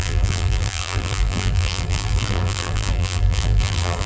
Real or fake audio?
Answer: fake